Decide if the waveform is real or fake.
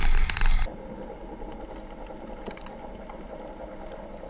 real